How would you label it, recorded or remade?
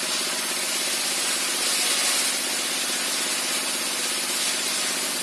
recorded